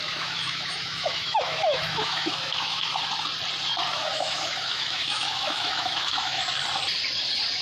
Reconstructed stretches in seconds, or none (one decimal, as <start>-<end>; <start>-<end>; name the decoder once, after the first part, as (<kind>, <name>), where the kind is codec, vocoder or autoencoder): 0.0-3.0 (autoencoder, DAC-VAE); 3.9-6.4